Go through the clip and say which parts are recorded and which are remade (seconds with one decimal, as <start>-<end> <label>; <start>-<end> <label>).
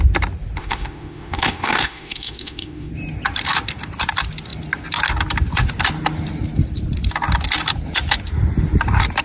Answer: 0.0-0.6 recorded; 0.6-2.9 remade; 2.9-9.2 recorded